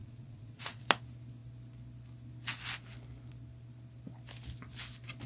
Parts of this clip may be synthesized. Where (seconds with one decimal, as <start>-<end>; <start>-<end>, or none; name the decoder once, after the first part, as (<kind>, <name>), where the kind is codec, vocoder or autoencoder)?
0.0-0.8 (vocoder, Vocos)